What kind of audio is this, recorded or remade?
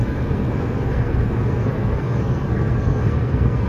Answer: remade